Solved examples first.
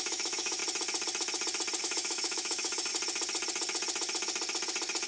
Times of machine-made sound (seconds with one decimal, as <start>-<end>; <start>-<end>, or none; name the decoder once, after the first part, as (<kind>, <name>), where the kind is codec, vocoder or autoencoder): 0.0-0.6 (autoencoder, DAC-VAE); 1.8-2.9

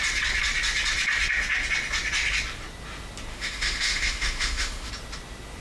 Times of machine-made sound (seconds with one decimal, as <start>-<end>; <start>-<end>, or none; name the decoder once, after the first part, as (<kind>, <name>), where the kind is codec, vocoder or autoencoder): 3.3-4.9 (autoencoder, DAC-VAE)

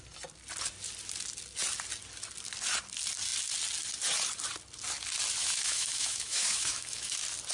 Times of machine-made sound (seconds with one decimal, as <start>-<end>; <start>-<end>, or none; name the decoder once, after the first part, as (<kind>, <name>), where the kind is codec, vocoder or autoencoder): 5.4-7.1 (autoencoder, DAC-VAE)

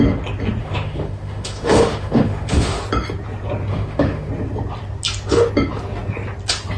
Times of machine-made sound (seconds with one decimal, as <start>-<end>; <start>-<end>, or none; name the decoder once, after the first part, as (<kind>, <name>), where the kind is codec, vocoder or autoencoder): 0.6-2.8 (autoencoder, DAC-VAE); 3.7-4.3